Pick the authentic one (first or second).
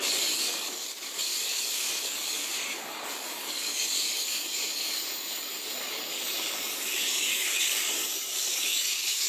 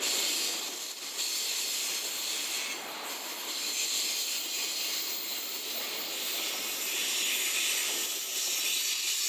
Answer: second